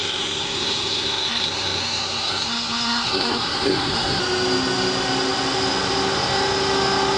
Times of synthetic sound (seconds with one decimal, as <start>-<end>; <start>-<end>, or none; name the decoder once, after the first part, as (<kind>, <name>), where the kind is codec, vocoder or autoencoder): 0.0-4.2 (codec, SNAC)